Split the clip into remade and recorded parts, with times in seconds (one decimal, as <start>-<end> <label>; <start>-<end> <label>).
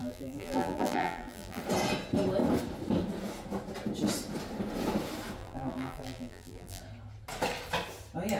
0.0-1.6 remade; 1.6-5.4 recorded; 5.4-6.8 remade; 6.8-8.4 recorded